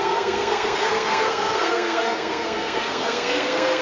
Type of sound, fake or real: fake